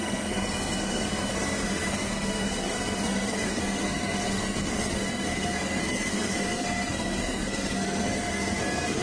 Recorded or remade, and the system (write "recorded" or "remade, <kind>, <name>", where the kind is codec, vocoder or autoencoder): remade, codec, SNAC